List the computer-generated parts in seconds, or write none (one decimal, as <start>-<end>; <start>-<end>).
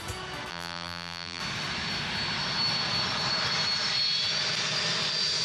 0.5-1.4